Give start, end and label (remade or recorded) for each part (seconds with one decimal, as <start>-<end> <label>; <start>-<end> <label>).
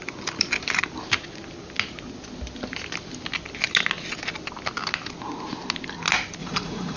0.0-6.4 recorded; 6.4-7.0 remade